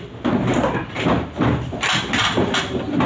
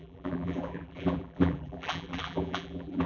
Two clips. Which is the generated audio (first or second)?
second